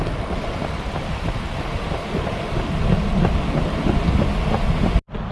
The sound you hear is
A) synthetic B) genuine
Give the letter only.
B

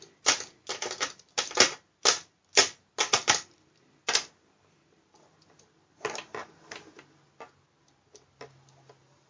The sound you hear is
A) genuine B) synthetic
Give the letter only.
A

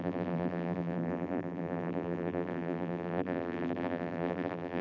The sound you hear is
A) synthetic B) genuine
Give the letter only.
A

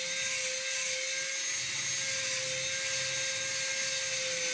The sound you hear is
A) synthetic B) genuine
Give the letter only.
B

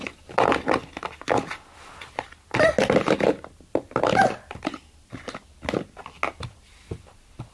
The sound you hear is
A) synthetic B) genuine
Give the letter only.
B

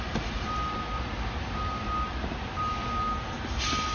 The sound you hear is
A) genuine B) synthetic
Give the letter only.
A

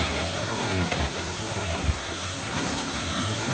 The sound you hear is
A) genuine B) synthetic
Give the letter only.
B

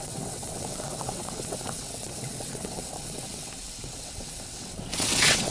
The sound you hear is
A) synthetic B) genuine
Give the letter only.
A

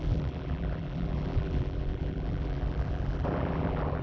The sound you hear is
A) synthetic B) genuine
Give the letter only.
A